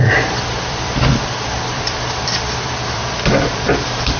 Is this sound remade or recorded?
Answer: remade